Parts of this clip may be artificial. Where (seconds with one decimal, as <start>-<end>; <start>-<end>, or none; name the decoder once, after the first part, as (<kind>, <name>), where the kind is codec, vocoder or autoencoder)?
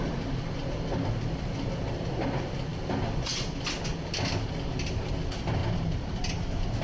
none